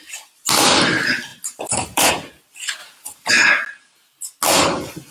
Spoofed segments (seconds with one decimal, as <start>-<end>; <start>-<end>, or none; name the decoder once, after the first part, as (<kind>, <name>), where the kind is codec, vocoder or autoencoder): 1.3-2.1 (vocoder, BigVGAN v2); 2.8-3.3